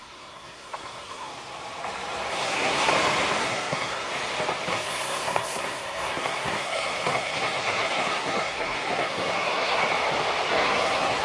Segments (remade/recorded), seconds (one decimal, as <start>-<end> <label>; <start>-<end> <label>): 0.0-1.3 remade; 1.3-2.3 recorded; 2.3-2.9 remade; 2.9-3.4 recorded; 3.4-4.1 remade; 4.1-4.7 recorded; 4.7-9.8 remade; 9.8-10.5 recorded; 10.5-11.2 remade